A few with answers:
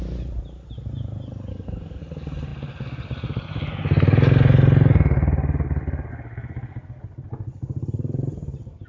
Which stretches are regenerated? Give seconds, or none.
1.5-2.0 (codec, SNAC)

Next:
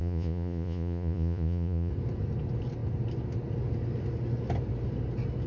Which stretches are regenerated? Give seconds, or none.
0.0-1.9 (vocoder, Vocos)

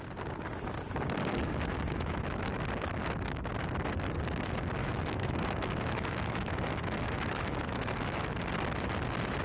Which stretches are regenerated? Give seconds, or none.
1.7-2.4 (autoencoder, DAC-VAE); 4.8-8.4

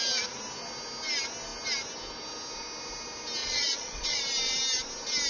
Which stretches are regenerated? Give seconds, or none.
3.4-4.2 (vocoder, Vocos)

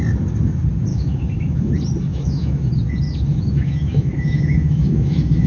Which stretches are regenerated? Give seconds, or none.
0.9-1.7 (autoencoder, DAC-VAE); 2.1-2.7; 3.3-5.5

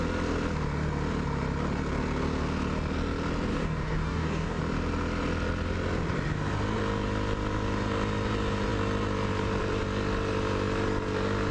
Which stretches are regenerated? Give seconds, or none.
3.5-4.6 (codec, DAC)

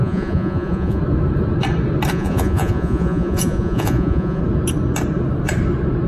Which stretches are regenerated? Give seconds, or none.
0.0-1.0 (vocoder, Vocos); 2.1-4.4